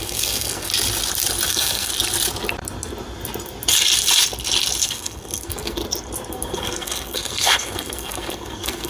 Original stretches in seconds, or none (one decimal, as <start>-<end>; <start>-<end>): 0.7-1.5; 1.9-4.8; 5.8-6.3